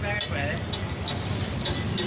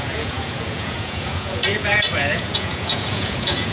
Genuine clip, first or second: first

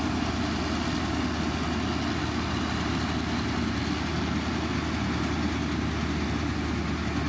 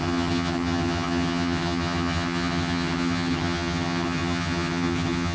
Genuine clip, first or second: first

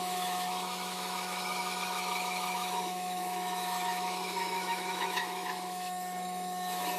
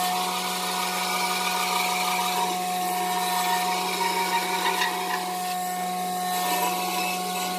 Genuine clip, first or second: second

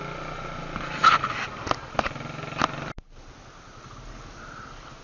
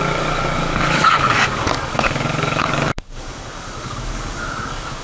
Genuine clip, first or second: first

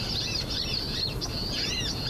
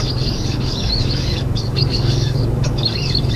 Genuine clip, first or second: first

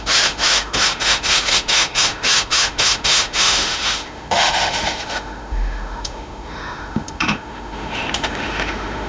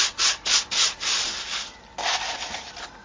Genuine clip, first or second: second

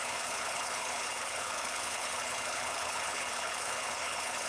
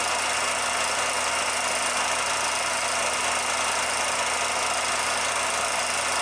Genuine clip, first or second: second